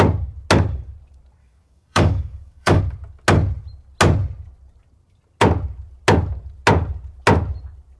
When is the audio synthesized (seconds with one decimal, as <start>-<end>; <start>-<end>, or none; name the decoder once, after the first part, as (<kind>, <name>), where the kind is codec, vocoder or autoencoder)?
1.4-2.8 (codec, DAC)